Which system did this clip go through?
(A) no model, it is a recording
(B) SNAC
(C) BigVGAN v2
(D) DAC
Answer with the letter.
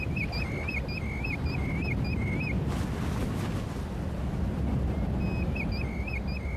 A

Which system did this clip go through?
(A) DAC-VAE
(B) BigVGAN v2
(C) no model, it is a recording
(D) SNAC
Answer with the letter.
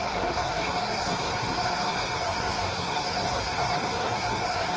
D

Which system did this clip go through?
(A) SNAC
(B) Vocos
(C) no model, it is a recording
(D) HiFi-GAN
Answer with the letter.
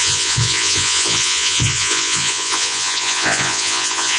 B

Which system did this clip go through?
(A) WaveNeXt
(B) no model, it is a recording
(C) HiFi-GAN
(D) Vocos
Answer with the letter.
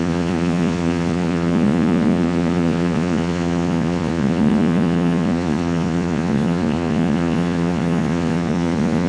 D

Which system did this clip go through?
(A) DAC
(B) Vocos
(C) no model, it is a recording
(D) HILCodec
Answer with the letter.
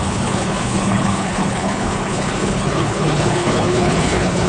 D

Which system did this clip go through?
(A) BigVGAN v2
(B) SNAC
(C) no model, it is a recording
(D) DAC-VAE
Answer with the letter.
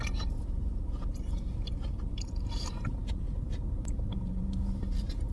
A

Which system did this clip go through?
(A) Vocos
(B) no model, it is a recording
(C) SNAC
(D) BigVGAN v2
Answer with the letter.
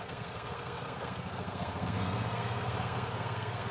C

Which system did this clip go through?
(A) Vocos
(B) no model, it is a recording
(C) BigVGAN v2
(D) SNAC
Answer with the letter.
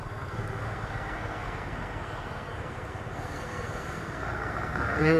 D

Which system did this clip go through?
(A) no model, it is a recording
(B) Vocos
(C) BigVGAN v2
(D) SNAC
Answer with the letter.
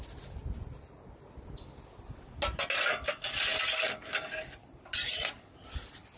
A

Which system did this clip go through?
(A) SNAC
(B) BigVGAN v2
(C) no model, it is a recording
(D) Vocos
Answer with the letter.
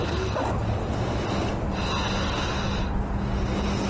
C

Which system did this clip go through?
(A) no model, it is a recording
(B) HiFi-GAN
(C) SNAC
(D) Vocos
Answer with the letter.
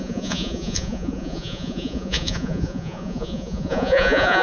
D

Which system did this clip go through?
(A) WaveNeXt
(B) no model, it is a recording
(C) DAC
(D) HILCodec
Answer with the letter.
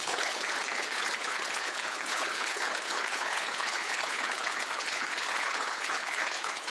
D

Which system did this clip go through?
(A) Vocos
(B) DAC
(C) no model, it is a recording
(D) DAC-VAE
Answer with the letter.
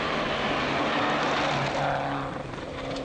C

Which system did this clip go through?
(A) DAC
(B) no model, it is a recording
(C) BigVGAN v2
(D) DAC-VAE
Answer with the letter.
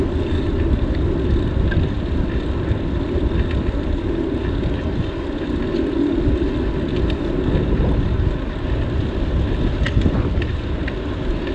B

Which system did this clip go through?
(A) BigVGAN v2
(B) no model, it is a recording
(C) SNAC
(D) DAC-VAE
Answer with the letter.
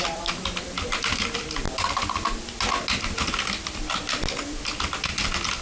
B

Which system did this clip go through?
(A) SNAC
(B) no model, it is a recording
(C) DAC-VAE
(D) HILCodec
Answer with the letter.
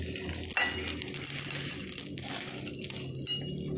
B